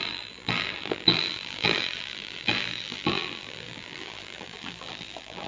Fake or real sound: fake